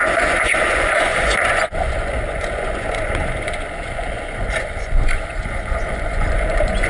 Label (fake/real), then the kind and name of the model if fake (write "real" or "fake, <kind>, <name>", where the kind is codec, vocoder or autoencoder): fake, vocoder, Vocos